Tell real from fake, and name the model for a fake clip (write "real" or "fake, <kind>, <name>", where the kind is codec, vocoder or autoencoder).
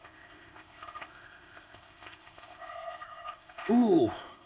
fake, codec, ZipCodec